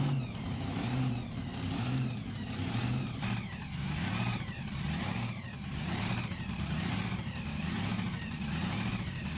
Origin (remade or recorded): remade